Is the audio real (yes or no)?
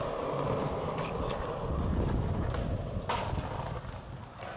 yes